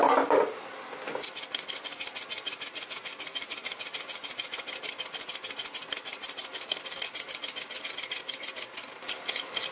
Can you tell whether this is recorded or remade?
recorded